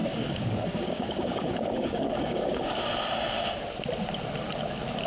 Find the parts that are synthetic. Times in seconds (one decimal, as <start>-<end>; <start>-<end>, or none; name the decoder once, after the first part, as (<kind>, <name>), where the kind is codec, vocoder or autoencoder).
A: 0.0-2.8 (codec, DAC)